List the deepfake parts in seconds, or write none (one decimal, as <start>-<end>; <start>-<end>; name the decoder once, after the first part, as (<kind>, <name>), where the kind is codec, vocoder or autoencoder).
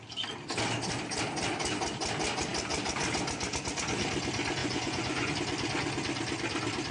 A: 4.6-5.3 (vocoder, Vocos)